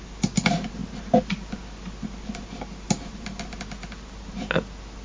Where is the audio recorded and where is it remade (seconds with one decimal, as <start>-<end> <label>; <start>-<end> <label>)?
0.0-5.0 recorded